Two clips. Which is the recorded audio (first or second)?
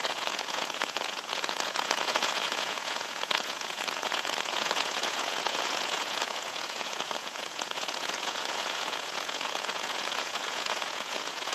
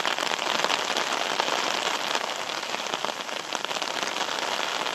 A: second